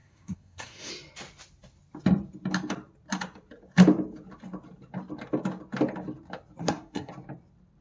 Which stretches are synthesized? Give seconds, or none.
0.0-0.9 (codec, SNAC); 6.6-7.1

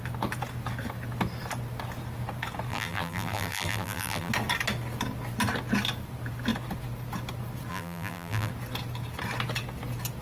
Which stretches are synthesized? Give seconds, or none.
2.7-4.3 (vocoder, BigVGAN v2); 7.7-8.5

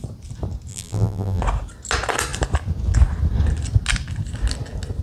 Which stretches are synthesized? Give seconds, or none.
0.7-1.4 (vocoder, BigVGAN v2)